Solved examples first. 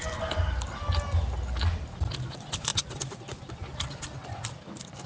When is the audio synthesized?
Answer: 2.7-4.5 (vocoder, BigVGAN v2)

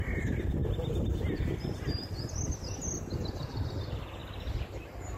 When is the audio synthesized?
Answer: none

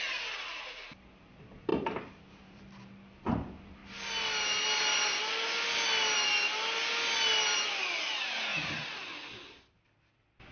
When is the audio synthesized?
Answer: 1.7-2.6 (vocoder, BigVGAN v2)

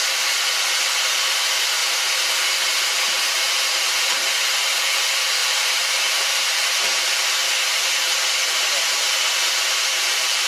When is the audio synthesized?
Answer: 5.4-6.2 (vocoder, BigVGAN v2)